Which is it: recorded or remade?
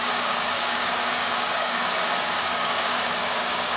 remade